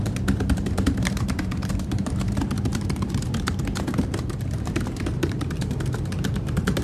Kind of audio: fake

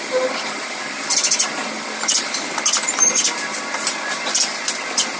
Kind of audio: fake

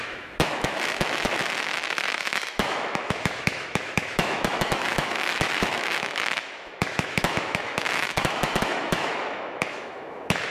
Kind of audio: fake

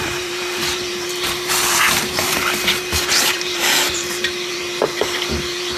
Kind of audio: fake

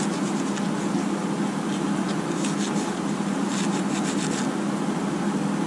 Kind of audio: real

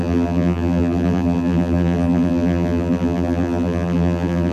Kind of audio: fake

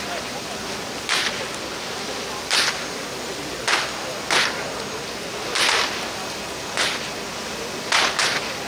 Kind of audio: real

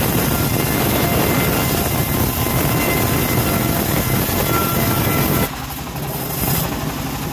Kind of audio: real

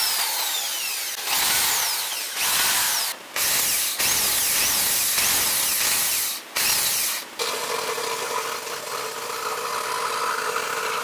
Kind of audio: real